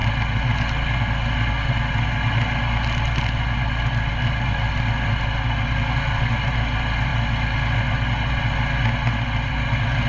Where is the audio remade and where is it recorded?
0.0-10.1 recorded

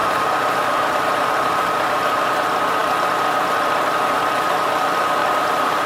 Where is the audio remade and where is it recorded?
0.0-2.3 remade; 2.3-5.2 recorded; 5.2-5.9 remade

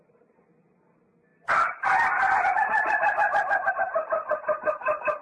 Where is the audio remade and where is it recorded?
0.0-1.3 recorded; 1.3-3.7 remade; 3.7-4.2 recorded; 4.2-5.2 remade

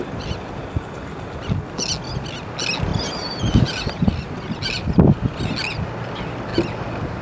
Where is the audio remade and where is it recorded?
0.0-2.9 recorded; 2.9-4.9 remade; 4.9-7.2 recorded

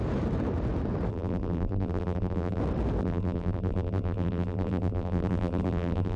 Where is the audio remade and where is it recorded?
0.0-1.1 recorded; 1.1-2.6 remade; 2.6-3.0 recorded; 3.0-6.2 remade

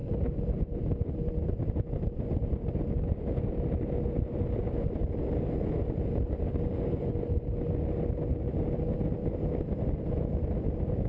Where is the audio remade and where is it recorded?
0.0-0.6 remade; 0.6-6.5 recorded; 6.5-7.1 remade; 7.1-11.1 recorded

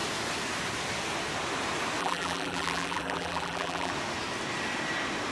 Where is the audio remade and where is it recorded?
0.0-2.0 recorded; 2.0-3.9 remade; 3.9-5.3 recorded